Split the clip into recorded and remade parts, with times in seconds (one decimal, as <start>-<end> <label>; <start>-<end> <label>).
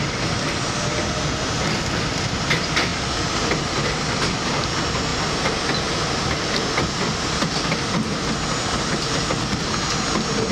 0.0-10.5 recorded